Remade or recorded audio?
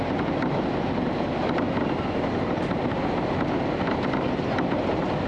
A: recorded